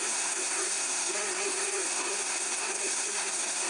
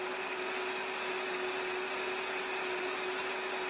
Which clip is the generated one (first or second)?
first